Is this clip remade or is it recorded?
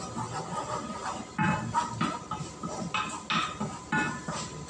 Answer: recorded